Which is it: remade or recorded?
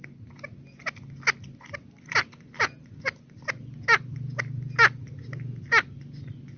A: recorded